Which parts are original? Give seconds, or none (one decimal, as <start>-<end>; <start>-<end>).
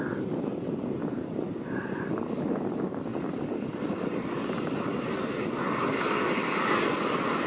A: 0.0-7.5